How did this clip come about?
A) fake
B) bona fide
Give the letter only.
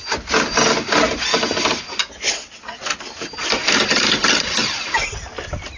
B